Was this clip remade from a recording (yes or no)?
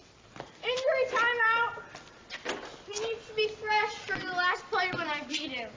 no